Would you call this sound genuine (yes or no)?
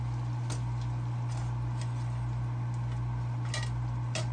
yes